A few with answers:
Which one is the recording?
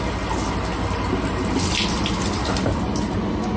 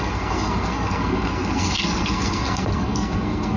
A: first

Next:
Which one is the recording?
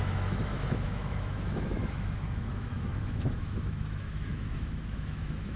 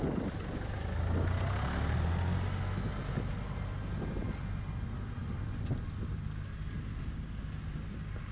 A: second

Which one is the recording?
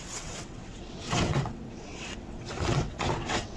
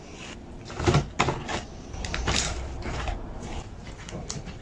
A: second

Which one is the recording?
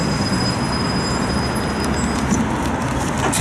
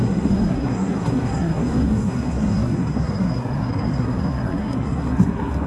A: first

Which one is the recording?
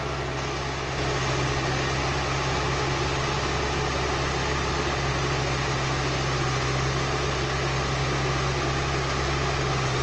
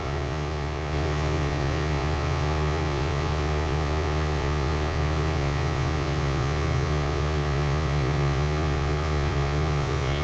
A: first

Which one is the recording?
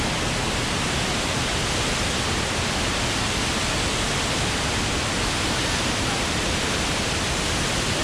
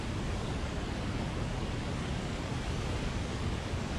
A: first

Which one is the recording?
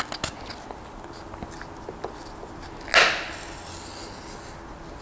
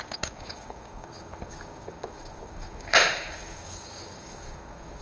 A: first